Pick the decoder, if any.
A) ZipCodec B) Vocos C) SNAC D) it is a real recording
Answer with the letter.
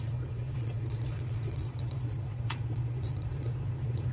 B